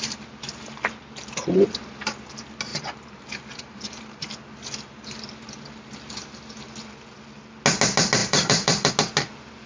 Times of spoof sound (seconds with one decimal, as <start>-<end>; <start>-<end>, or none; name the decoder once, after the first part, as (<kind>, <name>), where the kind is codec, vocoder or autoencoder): 2.7-4.3 (vocoder, BigVGAN v2); 8.2-8.9